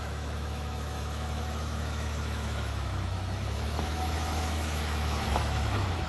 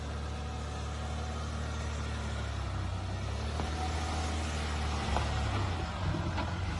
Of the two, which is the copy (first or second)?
first